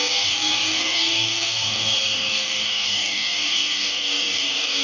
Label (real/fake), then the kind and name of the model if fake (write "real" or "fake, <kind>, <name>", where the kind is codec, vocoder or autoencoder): fake, codec, DAC